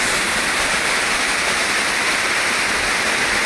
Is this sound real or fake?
real